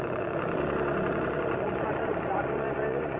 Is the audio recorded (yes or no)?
no